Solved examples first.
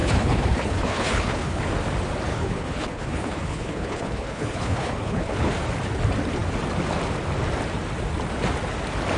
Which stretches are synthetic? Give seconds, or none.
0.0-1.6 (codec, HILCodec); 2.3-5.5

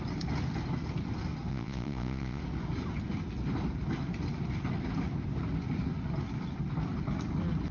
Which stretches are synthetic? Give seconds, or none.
1.5-2.4 (vocoder, Vocos)

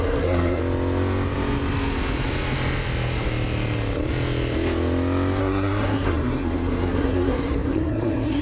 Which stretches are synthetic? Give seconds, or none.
0.0-0.6 (codec, SNAC); 5.4-8.4

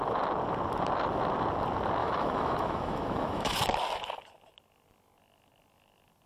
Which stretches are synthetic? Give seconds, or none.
2.0-3.6 (autoencoder, DAC-VAE)

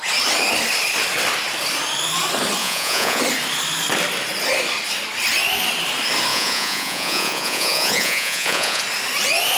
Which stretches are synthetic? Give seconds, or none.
2.6-3.2 (vocoder, Vocos); 6.3-8.8

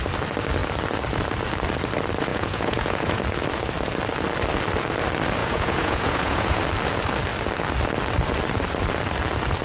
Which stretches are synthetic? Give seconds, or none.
2.3-3.2 (vocoder, Vocos); 5.4-6.6

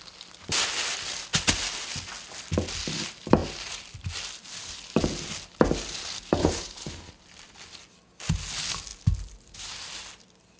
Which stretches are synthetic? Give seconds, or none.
6.4-7.2 (codec, HILCodec)

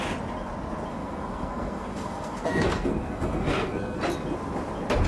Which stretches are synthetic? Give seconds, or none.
0.9-4.0 (codec, SNAC)